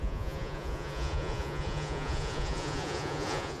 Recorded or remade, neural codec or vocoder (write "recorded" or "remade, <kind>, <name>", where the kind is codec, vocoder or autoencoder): remade, vocoder, Vocos